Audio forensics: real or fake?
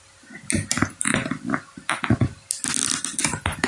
real